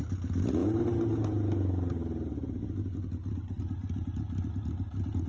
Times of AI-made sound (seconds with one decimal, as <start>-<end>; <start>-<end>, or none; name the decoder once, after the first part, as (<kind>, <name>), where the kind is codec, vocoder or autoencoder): none